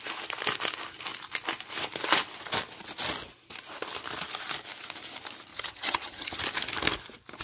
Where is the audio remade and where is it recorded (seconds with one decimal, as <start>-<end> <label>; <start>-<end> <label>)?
0.0-5.5 recorded; 5.5-6.4 remade; 6.4-7.4 recorded